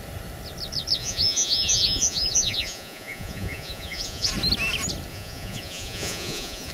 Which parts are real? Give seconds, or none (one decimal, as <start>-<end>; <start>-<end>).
0.0-1.0; 4.3-5.1